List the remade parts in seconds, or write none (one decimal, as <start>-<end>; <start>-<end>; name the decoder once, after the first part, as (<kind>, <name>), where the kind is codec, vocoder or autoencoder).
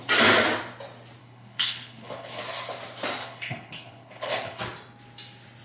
1.2-2.4 (codec, HILCodec); 3.2-4.6